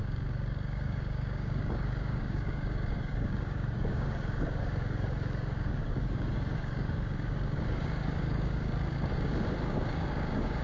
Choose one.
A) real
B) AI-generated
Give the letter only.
B